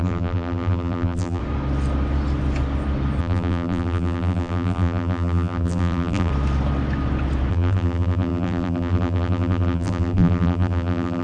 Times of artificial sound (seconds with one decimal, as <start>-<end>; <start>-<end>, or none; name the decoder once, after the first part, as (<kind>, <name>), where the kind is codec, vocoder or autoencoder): 0.0-1.4 (vocoder, BigVGAN v2); 3.2-6.3; 7.5-11.2